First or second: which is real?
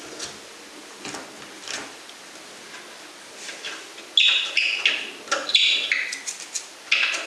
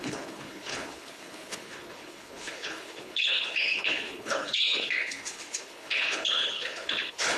first